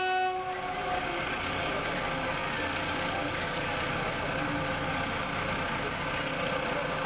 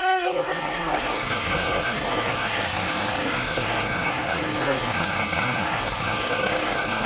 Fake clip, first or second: second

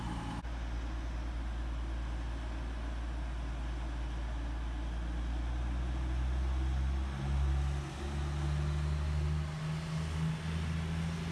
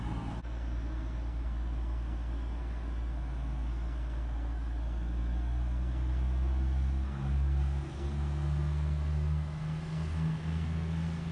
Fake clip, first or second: second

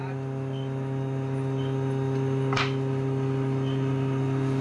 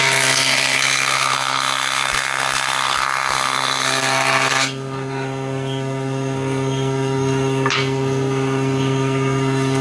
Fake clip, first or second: second